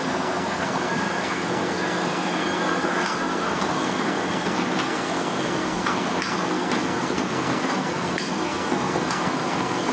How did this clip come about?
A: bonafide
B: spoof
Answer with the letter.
B